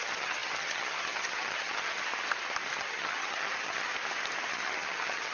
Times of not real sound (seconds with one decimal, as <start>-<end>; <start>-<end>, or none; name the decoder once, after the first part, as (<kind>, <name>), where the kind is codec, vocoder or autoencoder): 0.0-2.1 (vocoder, HiFi-GAN); 2.8-3.9; 4.5-5.3